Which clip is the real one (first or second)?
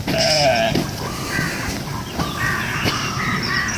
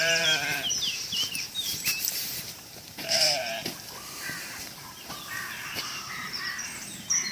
first